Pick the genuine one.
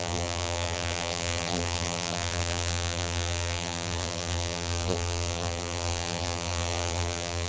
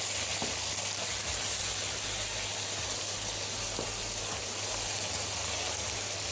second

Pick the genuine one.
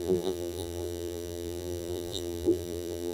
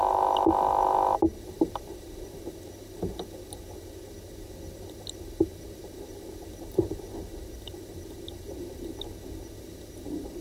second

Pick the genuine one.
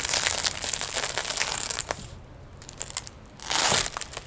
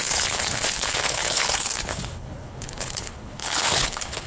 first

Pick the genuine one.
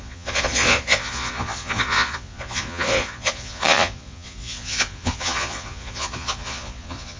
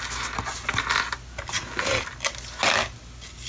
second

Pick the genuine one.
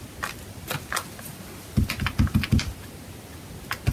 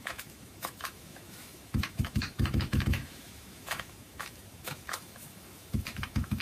first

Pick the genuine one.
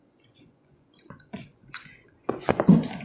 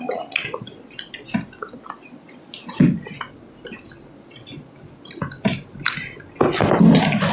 second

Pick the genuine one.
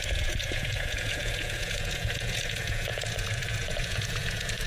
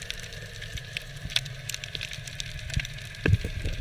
second